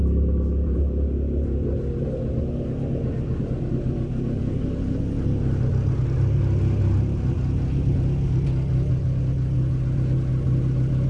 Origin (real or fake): real